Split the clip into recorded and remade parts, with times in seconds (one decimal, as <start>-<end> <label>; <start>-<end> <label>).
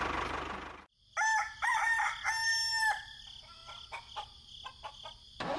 0.0-5.6 recorded